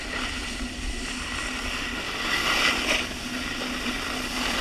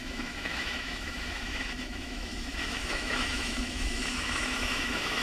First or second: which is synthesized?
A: second